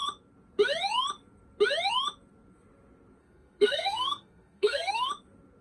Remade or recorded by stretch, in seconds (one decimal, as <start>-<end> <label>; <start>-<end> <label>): 0.0-3.2 recorded; 3.2-5.1 remade; 5.1-5.6 recorded